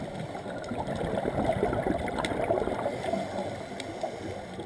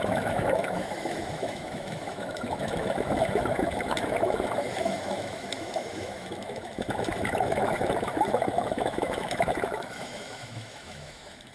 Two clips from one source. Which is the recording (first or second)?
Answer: first